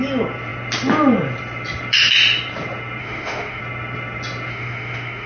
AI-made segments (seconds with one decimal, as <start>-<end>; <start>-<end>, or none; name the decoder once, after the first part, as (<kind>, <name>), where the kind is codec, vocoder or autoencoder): 3.0-3.6 (autoencoder, DAC-VAE); 4.5-5.3